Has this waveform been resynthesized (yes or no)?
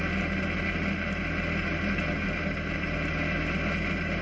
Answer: no